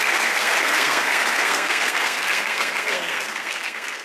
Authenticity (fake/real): fake